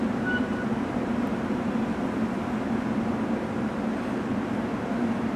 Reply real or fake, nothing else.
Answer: real